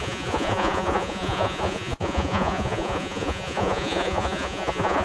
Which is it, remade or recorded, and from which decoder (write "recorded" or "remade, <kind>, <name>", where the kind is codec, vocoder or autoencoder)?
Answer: remade, vocoder, Vocos